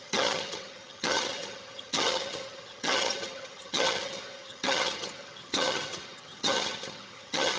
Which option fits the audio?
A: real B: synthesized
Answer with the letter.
B